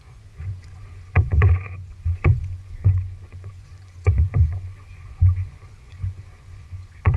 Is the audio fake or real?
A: fake